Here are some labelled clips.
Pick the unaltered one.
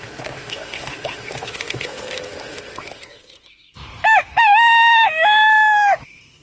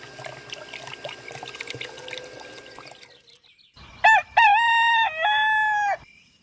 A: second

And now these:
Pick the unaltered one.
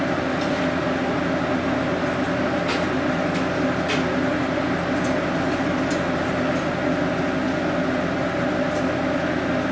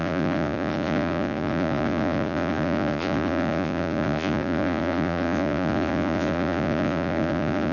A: first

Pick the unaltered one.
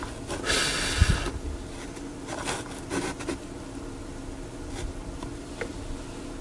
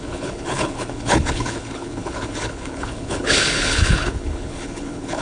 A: first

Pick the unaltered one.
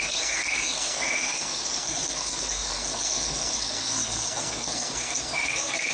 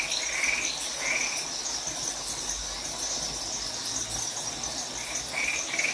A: second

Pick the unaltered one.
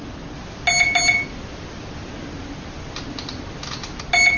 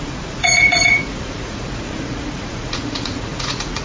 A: first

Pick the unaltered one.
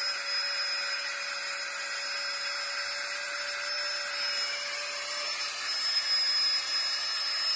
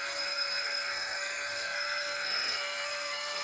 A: first